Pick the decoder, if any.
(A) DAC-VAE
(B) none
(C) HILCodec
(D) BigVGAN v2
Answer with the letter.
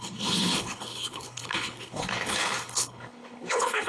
C